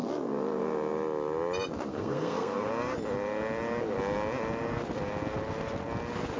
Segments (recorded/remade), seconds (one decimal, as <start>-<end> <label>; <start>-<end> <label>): 0.0-1.9 recorded; 1.9-2.7 remade; 2.7-6.4 recorded